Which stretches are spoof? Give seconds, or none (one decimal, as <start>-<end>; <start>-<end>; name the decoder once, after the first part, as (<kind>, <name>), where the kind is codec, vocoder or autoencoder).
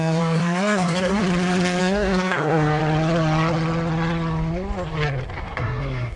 0.0-1.2 (codec, SNAC); 1.8-2.8; 5.4-6.2